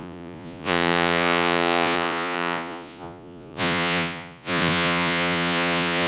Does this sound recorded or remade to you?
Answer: remade